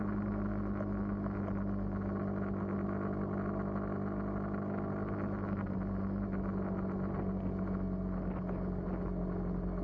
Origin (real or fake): real